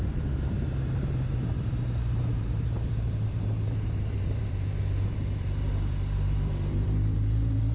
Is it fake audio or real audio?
fake